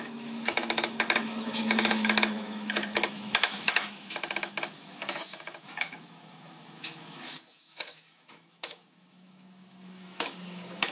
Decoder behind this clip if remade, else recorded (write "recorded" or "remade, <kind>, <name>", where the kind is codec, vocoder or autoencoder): remade, autoencoder, DAC-VAE